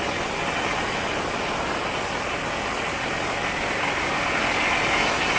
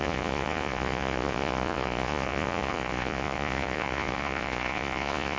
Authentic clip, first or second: first